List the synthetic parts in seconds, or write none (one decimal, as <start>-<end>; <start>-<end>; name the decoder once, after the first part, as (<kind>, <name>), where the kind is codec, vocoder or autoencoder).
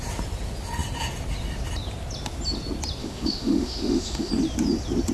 3.0-4.3 (autoencoder, DAC-VAE)